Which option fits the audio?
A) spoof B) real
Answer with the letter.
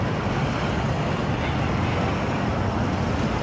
B